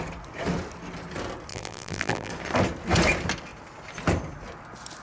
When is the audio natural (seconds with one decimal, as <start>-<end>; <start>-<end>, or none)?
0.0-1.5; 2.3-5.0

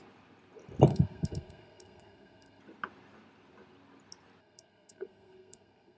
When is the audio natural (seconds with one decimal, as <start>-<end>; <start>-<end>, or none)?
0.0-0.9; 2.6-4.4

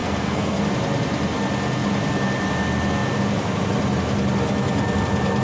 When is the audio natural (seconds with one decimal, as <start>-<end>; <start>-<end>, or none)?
0.6-5.4

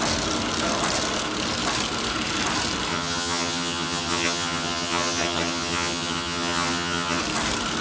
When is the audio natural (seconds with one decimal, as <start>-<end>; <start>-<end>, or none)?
0.0-2.9; 7.2-7.8

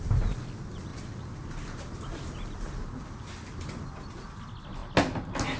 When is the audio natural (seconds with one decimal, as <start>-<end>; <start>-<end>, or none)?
0.0-5.6